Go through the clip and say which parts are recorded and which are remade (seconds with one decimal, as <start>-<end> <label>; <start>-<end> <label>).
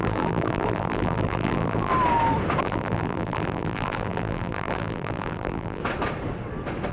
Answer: 0.0-1.9 remade; 1.9-2.6 recorded; 2.6-5.8 remade; 5.8-6.9 recorded